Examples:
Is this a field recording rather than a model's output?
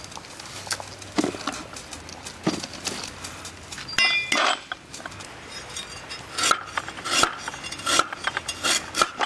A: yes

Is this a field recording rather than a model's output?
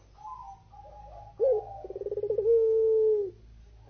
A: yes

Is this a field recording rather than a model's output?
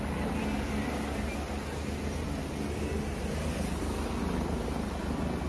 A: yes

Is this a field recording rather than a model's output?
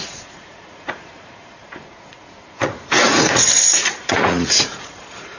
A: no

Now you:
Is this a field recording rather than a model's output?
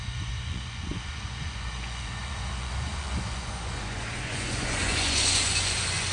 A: no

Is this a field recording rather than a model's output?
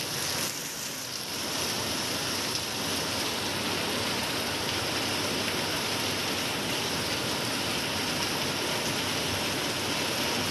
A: yes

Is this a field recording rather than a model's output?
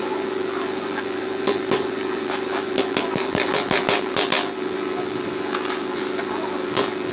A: no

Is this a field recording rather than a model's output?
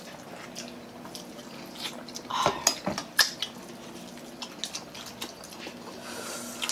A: yes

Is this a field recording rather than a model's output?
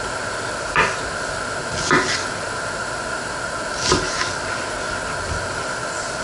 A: yes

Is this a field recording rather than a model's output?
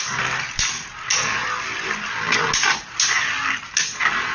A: yes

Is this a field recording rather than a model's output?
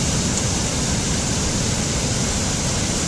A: yes